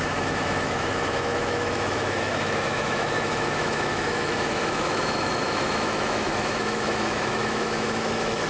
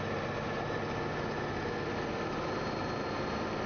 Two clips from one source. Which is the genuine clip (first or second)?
second